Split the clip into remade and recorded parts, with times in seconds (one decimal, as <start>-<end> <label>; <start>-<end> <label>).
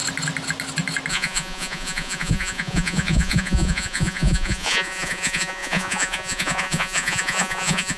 0.0-1.1 recorded; 1.1-8.0 remade